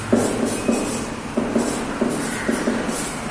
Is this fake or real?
real